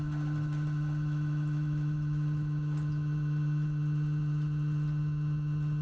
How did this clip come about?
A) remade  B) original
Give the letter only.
B